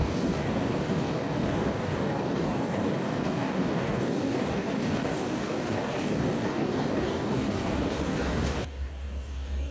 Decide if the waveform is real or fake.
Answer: fake